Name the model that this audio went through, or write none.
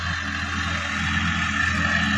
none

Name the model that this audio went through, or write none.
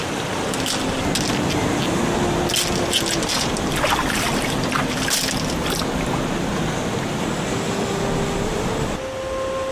none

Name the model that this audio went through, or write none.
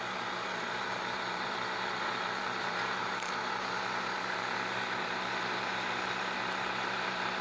vocoder, BigVGAN v2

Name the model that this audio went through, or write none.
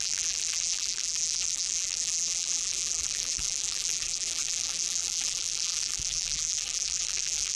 vocoder, BigVGAN v2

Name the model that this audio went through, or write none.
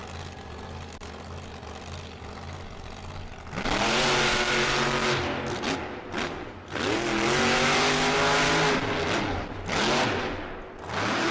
none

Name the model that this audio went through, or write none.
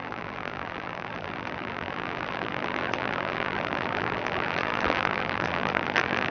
vocoder, BigVGAN v2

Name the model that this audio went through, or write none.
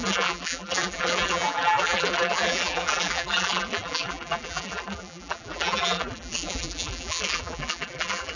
vocoder, BigVGAN v2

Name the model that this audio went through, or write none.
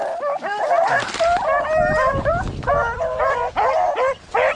none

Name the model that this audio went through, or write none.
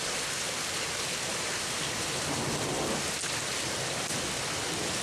none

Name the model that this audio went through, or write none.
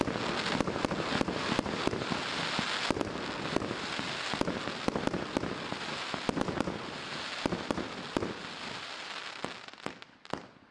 none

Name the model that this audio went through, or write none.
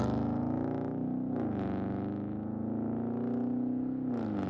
none